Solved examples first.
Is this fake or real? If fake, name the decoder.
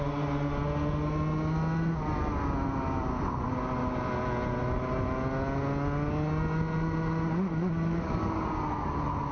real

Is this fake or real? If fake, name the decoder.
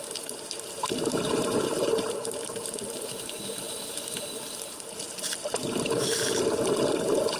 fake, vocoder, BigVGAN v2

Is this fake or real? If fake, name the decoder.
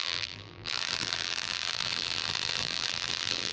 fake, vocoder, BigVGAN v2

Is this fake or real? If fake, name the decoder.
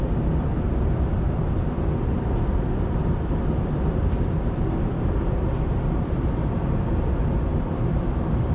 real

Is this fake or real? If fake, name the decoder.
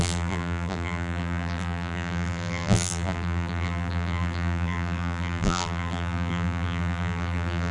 fake, vocoder, BigVGAN v2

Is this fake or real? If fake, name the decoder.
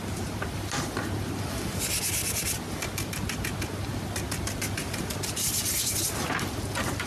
real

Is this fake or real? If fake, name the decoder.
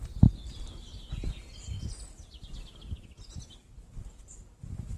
real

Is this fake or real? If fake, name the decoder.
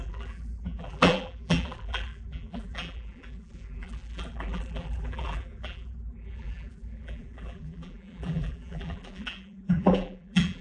fake, vocoder, BigVGAN v2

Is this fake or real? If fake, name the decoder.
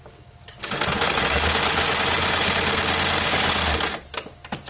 real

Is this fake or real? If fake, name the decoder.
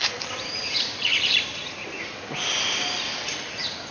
fake, vocoder, BigVGAN v2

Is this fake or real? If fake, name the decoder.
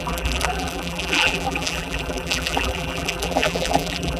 fake, vocoder, BigVGAN v2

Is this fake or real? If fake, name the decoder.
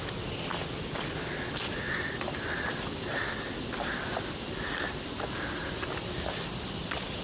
real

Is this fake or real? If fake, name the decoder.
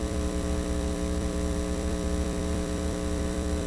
fake, vocoder, BigVGAN v2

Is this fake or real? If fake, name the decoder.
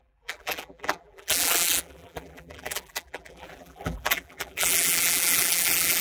fake, vocoder, BigVGAN v2